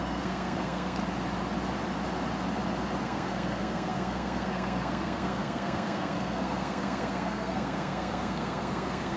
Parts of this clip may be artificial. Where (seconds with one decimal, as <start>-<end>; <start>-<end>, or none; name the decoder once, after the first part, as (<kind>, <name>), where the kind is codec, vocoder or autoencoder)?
0.0-1.0 (codec, SNAC); 3.0-9.2